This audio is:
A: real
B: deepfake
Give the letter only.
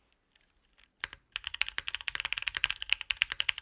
A